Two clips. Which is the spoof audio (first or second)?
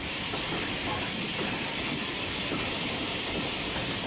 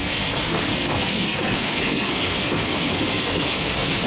second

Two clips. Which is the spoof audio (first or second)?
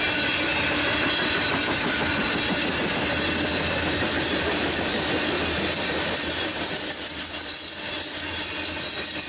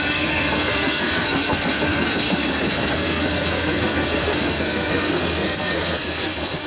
second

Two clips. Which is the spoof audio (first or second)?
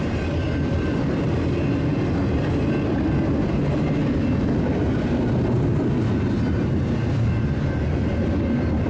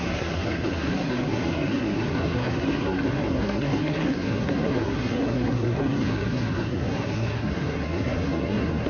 second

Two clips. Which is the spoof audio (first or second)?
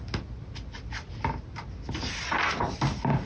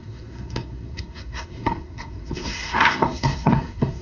second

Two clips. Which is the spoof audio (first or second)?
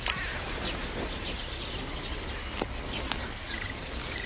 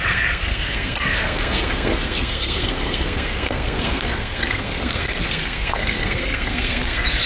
second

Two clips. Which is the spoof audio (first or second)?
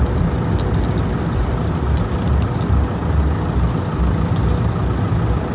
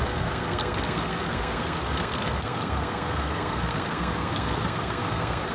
second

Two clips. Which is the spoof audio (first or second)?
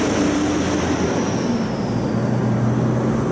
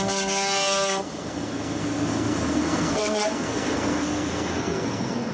second